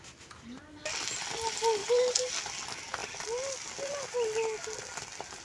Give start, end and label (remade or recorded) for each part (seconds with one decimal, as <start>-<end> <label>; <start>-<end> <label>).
0.0-1.8 recorded; 1.8-2.3 remade; 2.3-5.4 recorded